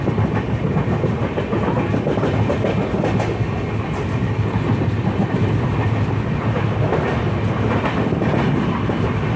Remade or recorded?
recorded